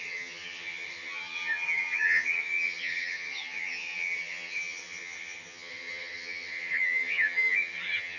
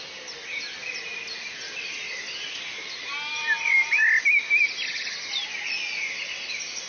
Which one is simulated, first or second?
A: first